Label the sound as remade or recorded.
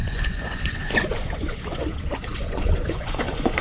remade